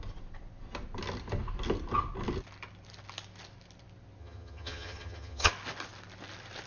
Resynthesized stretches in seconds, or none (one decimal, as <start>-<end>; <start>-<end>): 4.2-5.5